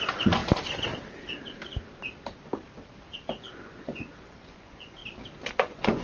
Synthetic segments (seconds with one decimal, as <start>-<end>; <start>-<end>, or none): 0.0-0.4; 3.4-5.0; 5.5-6.0